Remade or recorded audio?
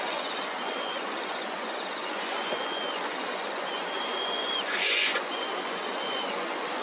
remade